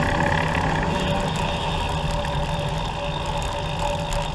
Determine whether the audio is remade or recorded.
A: recorded